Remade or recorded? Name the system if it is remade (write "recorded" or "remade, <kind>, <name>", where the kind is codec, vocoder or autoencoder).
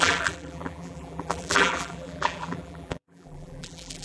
remade, vocoder, BigVGAN v2